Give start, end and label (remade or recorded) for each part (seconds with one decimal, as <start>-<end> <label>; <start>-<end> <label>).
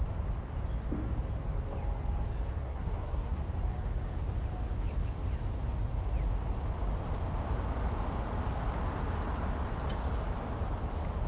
0.0-2.6 recorded; 2.6-3.4 remade; 3.4-11.3 recorded